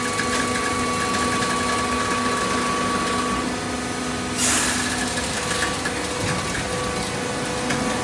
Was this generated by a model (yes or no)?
no